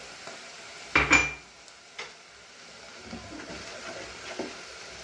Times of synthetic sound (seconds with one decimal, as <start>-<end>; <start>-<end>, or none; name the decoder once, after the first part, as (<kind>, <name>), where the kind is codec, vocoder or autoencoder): none